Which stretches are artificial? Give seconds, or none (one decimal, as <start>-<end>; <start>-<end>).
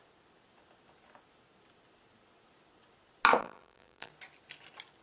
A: 3.4-4.1